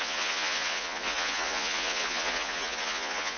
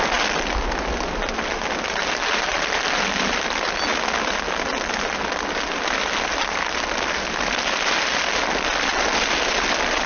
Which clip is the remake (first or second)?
first